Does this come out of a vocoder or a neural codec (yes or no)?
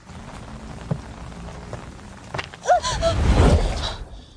no